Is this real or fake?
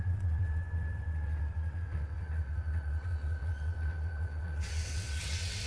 fake